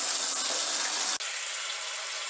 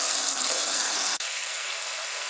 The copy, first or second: second